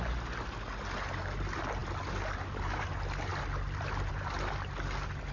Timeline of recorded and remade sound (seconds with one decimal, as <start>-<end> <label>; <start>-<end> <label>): 0.0-5.3 recorded